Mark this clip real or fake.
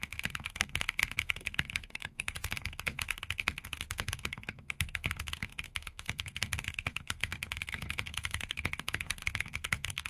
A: fake